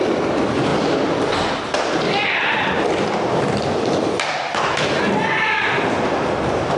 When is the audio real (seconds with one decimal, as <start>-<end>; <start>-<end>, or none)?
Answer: 0.0-6.8